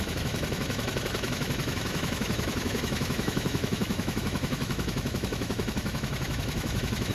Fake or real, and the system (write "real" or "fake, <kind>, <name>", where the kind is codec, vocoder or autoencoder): fake, autoencoder, DAC-VAE